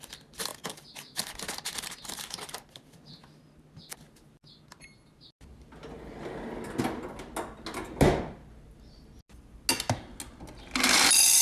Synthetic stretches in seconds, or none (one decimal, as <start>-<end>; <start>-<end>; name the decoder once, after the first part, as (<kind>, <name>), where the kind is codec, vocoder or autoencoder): 0.5-1.3 (vocoder, BigVGAN v2)